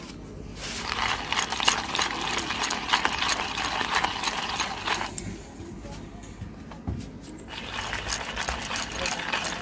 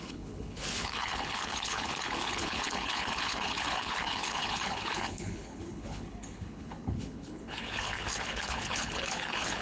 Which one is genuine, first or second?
first